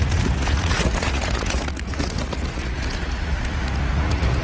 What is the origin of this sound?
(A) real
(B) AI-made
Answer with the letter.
B